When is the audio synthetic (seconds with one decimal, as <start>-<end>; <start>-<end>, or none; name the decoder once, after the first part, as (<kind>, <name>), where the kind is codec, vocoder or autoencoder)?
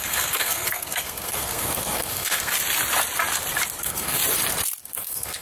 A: 0.0-2.5 (codec, SNAC); 3.8-4.2; 4.8-5.4